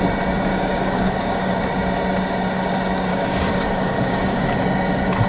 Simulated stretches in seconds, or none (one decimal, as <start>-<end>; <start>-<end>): 0.5-1.6; 3.1-4.5